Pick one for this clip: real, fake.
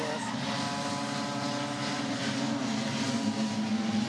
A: real